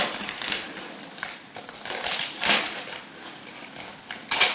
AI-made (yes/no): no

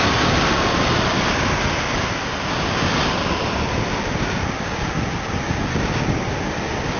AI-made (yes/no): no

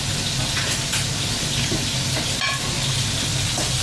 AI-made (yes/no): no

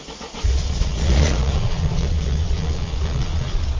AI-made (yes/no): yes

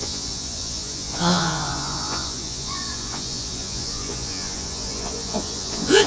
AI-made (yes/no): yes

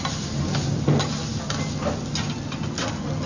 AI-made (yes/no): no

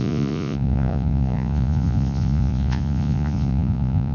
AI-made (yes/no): yes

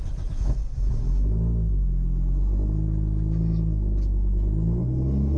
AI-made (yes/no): no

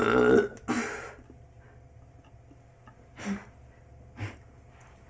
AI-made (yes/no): no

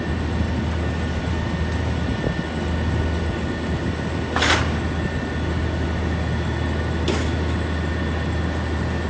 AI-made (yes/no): no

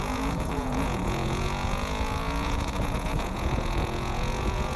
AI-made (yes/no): yes